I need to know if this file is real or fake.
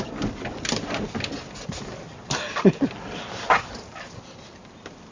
fake